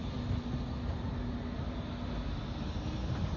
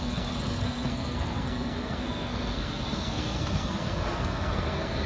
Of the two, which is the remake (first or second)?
second